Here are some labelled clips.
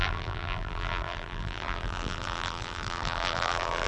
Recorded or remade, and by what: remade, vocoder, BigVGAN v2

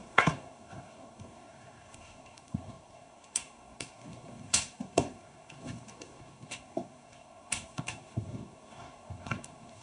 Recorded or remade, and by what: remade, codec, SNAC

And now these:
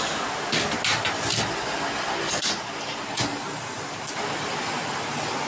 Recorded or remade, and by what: recorded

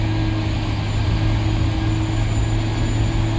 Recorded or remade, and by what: recorded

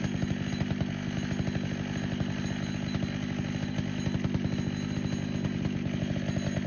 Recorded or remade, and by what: recorded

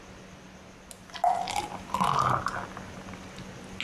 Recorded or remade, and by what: recorded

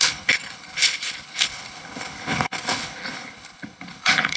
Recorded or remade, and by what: remade, codec, HILCodec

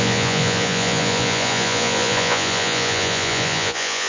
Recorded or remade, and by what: remade, vocoder, Vocos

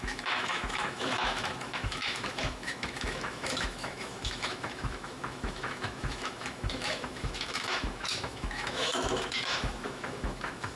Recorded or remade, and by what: remade, autoencoder, DAC-VAE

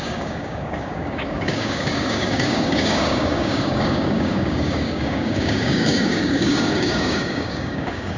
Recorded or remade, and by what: remade, codec, DAC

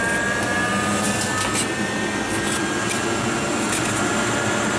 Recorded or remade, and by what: recorded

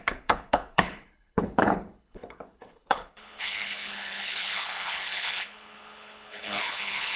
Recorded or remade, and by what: remade, codec, HILCodec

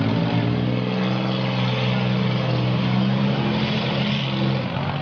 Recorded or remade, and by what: recorded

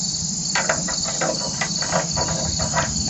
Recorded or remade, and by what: remade, vocoder, BigVGAN v2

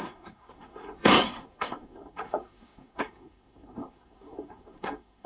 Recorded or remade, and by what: remade, codec, SNAC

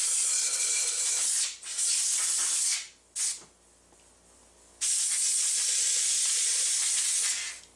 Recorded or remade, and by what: recorded